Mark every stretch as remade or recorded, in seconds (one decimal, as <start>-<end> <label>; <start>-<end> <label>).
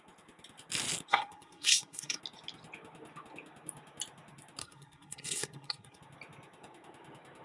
0.0-1.1 recorded; 1.1-2.2 remade; 2.2-4.6 recorded; 4.6-6.0 remade; 6.0-7.4 recorded